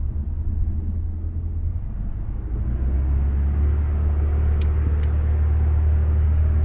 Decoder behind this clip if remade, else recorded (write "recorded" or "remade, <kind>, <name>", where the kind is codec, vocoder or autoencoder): recorded